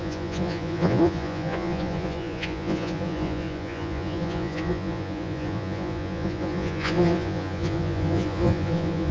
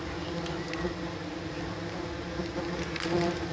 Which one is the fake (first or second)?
first